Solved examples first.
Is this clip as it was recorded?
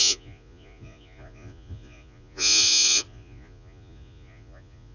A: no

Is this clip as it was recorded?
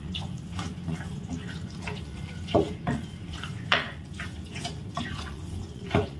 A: no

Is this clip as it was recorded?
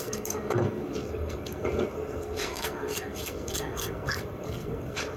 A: no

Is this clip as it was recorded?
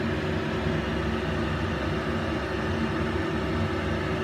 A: yes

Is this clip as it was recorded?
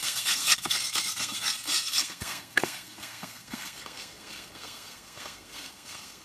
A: no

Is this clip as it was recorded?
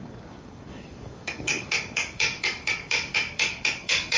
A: no